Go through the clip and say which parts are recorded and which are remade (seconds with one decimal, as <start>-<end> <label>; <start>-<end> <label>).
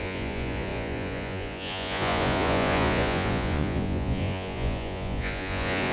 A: 0.0-5.9 remade